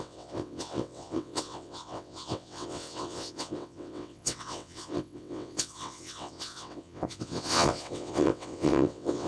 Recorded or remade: remade